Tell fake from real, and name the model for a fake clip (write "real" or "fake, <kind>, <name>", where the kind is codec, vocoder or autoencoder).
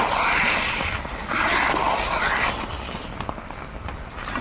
real